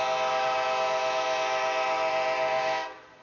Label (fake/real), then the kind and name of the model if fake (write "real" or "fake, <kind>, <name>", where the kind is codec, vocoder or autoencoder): real